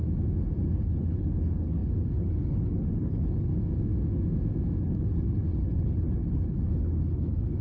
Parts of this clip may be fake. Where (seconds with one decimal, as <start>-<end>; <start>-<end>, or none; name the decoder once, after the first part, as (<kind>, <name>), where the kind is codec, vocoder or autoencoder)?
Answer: 0.7-3.5 (codec, HILCodec); 4.8-7.6